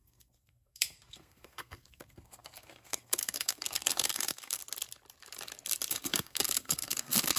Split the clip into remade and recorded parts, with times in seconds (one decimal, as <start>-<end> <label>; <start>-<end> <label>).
0.0-4.6 remade; 4.6-5.9 recorded; 5.9-7.4 remade